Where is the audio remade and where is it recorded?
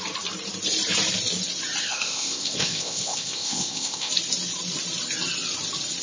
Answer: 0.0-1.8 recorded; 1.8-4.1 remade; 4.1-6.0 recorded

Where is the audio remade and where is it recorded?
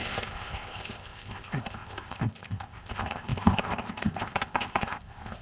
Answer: 0.0-5.4 remade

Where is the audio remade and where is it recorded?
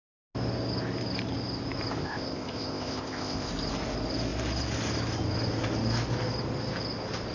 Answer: 0.0-2.0 recorded; 2.0-3.5 remade; 3.5-7.3 recorded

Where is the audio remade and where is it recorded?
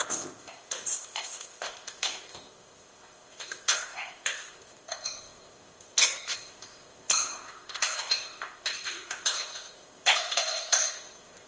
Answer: 0.0-11.5 remade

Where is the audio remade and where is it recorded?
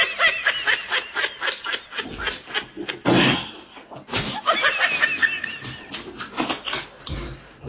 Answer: 0.0-7.7 recorded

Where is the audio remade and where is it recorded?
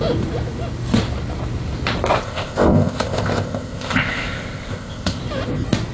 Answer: 0.0-2.2 recorded; 2.2-5.2 remade; 5.2-5.9 recorded